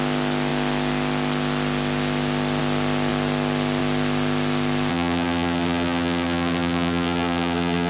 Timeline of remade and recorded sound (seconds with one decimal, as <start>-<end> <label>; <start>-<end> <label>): 0.0-4.9 recorded; 4.9-7.9 remade